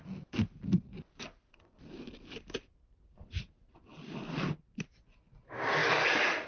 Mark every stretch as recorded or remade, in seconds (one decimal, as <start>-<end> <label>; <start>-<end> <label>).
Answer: 0.0-0.9 recorded; 0.9-3.0 remade; 3.0-3.9 recorded; 3.9-4.6 remade; 4.6-5.8 recorded; 5.8-6.5 remade